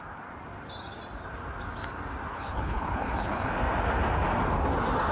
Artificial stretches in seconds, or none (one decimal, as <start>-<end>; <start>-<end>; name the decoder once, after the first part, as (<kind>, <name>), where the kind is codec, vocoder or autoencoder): 2.3-3.5 (codec, HILCodec)